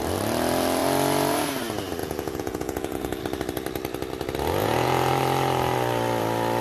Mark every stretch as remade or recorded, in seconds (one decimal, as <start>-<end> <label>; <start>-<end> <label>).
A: 0.0-2.0 recorded; 2.0-3.2 remade; 3.2-4.6 recorded; 4.6-5.1 remade; 5.1-6.6 recorded